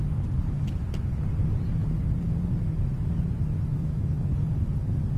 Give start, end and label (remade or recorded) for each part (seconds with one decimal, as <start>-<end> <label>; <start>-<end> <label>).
0.0-3.7 recorded; 3.7-4.3 remade; 4.3-5.2 recorded